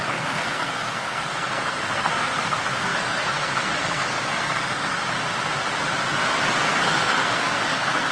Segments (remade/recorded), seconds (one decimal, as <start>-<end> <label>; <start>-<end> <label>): 0.0-5.0 remade; 5.0-6.6 recorded; 6.6-8.1 remade